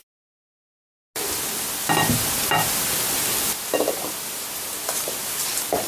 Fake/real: real